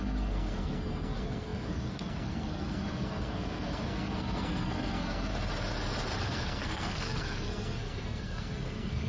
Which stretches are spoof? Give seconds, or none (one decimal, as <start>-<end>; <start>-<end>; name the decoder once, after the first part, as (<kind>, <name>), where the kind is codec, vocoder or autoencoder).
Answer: 0.0-5.3 (codec, SNAC); 6.2-9.1